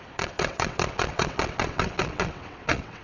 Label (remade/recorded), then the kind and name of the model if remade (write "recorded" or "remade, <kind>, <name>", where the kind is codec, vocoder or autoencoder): remade, vocoder, WaveNeXt